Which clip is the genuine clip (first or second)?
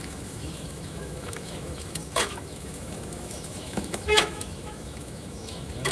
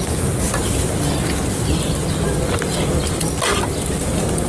second